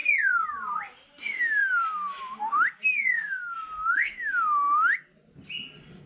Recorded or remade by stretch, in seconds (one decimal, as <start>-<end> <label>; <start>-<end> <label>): 0.0-6.1 recorded